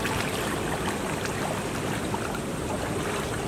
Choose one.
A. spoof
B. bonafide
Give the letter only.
B